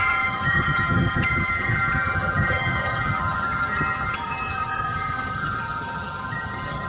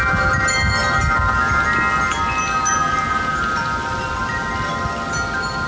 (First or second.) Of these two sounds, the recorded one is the second